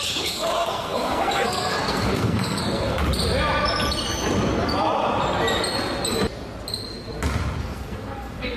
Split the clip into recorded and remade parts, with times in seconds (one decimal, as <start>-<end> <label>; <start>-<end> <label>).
0.0-3.0 remade; 3.0-7.6 recorded; 7.6-8.6 remade